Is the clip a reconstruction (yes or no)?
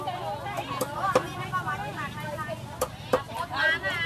no